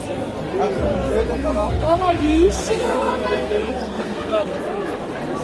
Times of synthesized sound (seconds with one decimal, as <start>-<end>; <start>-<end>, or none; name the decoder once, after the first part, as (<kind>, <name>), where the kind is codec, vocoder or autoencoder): 1.4-4.6 (codec, SNAC)